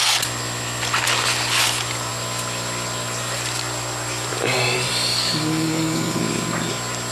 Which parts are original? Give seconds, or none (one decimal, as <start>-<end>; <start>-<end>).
0.0-5.1; 6.2-7.1